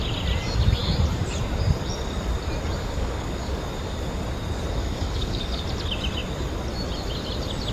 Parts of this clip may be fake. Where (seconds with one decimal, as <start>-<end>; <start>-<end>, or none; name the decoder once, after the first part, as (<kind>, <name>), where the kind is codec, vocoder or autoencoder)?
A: 2.8-3.6 (codec, DAC); 4.8-5.6